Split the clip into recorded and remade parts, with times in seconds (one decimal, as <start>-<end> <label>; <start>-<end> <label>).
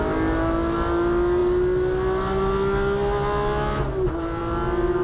0.0-5.0 recorded